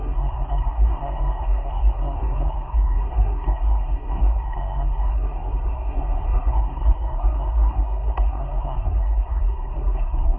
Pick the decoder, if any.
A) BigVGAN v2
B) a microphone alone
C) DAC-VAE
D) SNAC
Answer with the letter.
D